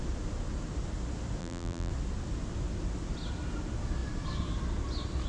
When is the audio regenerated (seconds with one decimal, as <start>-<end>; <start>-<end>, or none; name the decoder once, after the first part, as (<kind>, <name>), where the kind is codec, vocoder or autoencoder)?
1.4-1.9 (vocoder, BigVGAN v2)